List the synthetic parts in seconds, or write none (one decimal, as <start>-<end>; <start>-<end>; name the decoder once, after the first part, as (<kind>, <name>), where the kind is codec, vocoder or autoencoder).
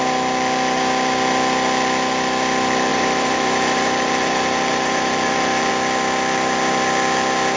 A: 2.9-5.7 (vocoder, BigVGAN v2)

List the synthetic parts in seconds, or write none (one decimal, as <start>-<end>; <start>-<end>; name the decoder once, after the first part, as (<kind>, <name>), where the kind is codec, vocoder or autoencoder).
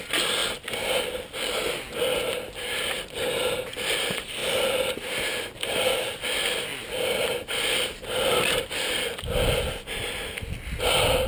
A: none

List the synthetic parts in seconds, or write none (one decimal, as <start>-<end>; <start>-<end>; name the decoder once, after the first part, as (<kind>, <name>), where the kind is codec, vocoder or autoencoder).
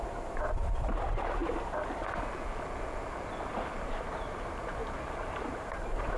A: 0.0-1.4 (vocoder, BigVGAN v2); 3.5-4.8; 5.4-6.2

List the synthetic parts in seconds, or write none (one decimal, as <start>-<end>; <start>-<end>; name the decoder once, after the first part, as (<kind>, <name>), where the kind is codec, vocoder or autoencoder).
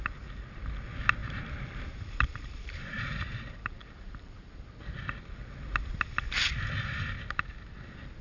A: 1.2-3.0 (vocoder, BigVGAN v2); 3.6-4.5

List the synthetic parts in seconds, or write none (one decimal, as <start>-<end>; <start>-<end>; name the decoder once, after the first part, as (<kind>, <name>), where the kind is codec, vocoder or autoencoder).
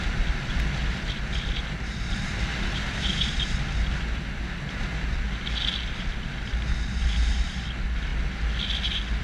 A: 2.5-3.2 (vocoder, BigVGAN v2)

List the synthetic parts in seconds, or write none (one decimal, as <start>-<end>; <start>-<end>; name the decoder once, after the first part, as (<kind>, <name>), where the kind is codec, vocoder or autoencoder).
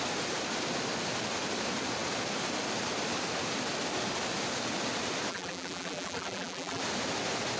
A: 5.3-6.8 (vocoder, BigVGAN v2)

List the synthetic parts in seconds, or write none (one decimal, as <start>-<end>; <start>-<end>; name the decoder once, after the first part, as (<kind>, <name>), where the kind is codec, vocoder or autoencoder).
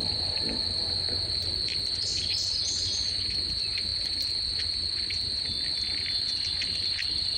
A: 0.0-0.8 (vocoder, BigVGAN v2)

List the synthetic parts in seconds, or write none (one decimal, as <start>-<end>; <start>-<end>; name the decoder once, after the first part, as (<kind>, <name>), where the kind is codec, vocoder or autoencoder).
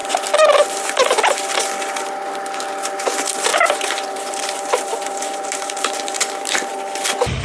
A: 3.5-6.7 (vocoder, BigVGAN v2)